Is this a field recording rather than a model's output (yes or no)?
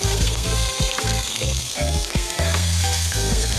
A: no